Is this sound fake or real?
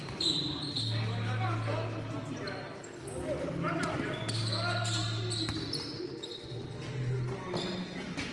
real